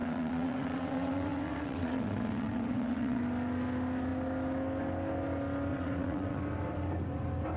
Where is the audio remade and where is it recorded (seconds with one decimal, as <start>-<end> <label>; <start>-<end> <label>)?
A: 0.0-3.2 remade; 3.2-5.7 recorded; 5.7-6.4 remade; 6.4-7.6 recorded